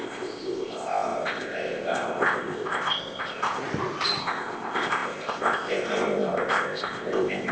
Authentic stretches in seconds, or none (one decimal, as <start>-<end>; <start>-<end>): 3.6-4.2